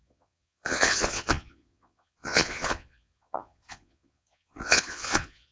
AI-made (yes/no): yes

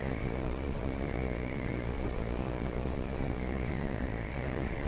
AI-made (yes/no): yes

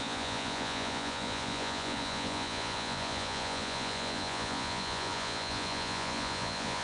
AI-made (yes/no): yes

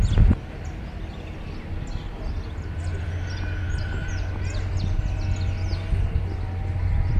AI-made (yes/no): no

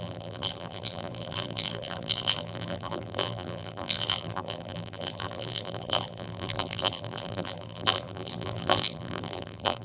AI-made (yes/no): yes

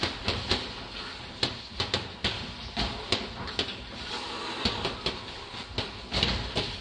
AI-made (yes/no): no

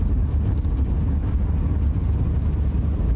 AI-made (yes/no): no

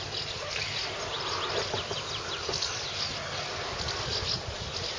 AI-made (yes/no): no